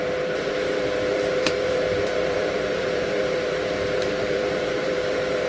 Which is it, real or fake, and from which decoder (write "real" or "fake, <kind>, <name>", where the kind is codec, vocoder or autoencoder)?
fake, vocoder, BigVGAN v2